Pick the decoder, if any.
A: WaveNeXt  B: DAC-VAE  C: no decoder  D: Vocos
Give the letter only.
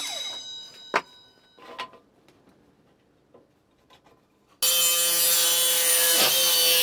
C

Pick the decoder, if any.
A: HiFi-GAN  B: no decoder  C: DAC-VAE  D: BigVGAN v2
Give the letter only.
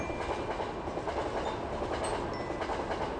B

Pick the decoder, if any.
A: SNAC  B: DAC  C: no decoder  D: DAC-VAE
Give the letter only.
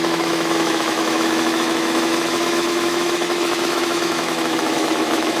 D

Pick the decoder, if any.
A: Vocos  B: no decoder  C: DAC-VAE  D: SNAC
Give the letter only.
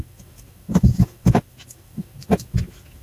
C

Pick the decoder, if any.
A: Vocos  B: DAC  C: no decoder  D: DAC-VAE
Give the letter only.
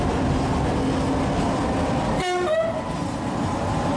C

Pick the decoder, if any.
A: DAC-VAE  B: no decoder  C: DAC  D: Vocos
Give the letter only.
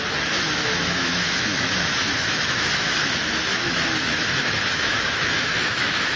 A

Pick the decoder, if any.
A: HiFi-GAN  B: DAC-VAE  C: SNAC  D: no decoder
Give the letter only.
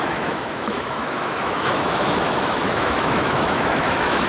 B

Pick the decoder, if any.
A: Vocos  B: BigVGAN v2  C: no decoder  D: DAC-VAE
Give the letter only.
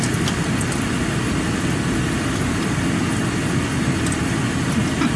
C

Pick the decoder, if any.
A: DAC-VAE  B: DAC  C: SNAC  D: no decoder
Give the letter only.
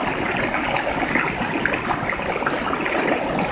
D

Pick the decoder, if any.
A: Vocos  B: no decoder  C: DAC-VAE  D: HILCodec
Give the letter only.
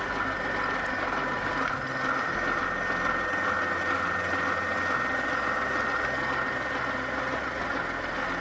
B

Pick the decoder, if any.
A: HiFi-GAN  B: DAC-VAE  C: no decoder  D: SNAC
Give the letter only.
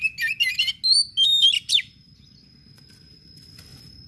C